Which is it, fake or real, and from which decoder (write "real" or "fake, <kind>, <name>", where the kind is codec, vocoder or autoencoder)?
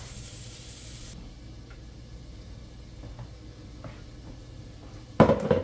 real